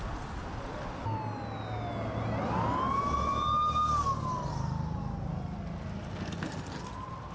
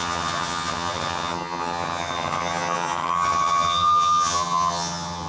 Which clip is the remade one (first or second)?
second